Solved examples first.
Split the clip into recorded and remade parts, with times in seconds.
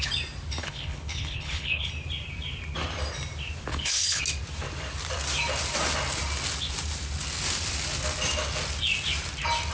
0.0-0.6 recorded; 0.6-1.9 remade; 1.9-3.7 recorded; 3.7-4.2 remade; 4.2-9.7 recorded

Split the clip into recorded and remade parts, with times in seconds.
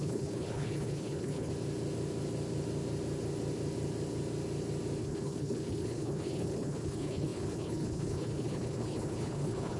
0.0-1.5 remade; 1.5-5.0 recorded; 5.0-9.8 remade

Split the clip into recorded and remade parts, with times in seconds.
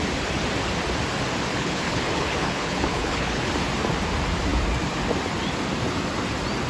0.0-1.5 recorded; 1.5-3.5 remade; 3.5-6.7 recorded